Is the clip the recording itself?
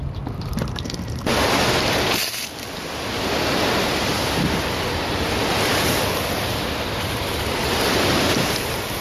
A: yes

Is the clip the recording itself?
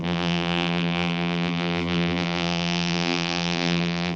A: no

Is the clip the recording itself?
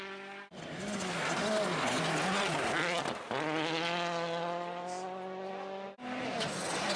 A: yes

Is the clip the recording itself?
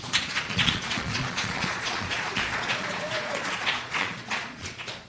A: no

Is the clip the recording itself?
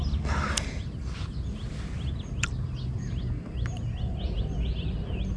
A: yes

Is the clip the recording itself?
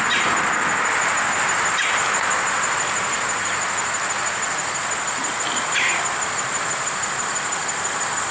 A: yes